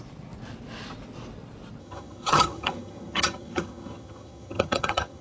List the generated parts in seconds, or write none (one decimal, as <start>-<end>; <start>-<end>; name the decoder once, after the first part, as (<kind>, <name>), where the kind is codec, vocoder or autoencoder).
1.8-5.2 (vocoder, HiFi-GAN)